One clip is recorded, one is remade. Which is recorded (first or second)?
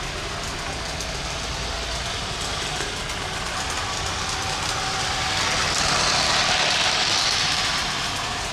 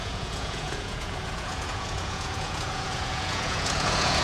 first